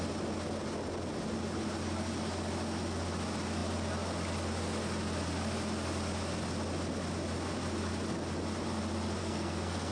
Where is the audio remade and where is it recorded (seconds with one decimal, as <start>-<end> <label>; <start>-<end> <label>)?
0.0-9.2 recorded; 9.2-9.9 remade